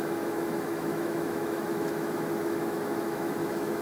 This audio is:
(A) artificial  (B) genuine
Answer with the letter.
A